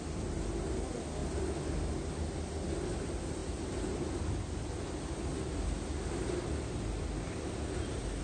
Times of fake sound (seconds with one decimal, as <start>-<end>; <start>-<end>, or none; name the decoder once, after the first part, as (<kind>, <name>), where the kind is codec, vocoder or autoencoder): none

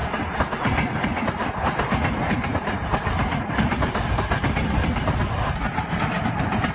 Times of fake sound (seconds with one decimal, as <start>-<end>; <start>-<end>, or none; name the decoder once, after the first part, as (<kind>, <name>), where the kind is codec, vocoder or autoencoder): none

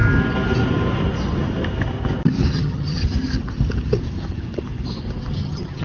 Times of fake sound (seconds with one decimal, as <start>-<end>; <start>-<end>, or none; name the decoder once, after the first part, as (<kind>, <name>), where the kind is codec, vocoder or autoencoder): 2.5-3.0 (vocoder, HiFi-GAN); 5.3-5.8

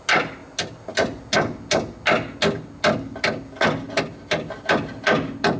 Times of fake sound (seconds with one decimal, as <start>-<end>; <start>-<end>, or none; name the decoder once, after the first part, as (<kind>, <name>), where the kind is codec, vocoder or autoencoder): none

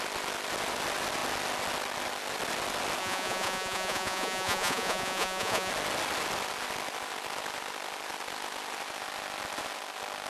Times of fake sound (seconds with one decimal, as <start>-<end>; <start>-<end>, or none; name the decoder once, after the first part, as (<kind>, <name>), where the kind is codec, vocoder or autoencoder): 3.0-5.7 (vocoder, Vocos)